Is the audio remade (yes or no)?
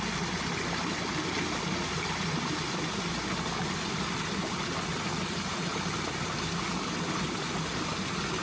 no